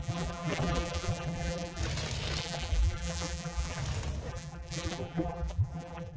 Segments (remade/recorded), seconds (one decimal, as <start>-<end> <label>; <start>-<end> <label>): 0.0-1.8 remade; 1.8-2.4 recorded; 2.4-3.8 remade; 3.8-4.3 recorded; 4.3-6.2 remade